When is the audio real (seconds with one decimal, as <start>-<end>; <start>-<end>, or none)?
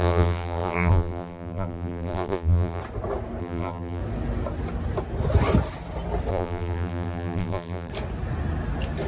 2.8-3.4; 4.0-6.3; 7.9-9.1